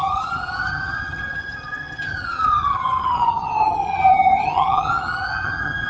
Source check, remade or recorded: remade